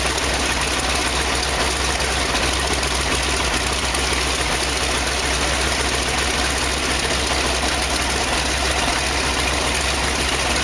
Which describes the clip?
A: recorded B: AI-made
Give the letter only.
A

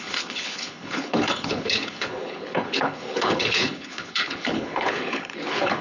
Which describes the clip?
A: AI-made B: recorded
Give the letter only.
A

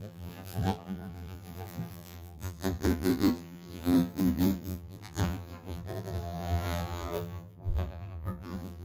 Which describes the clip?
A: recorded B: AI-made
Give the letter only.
B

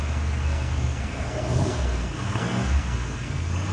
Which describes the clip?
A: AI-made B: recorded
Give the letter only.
A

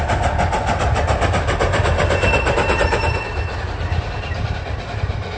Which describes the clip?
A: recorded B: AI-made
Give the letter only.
A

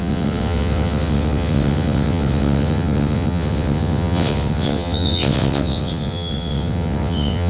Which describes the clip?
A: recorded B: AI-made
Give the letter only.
B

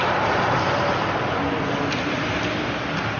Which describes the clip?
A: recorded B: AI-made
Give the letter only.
A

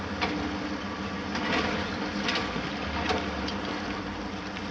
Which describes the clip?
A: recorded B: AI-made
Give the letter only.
A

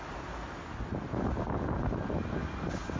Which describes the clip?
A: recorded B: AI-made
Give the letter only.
A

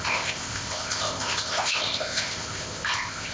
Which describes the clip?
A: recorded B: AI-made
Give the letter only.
B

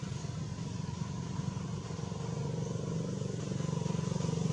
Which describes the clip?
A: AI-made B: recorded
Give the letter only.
B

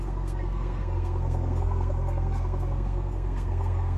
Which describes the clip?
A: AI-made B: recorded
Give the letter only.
A